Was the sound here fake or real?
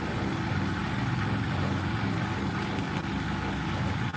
real